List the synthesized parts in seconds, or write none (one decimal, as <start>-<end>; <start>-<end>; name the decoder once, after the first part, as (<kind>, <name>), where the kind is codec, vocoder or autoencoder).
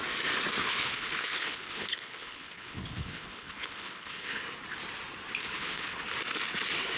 0.6-4.4 (codec, HILCodec); 5.4-6.0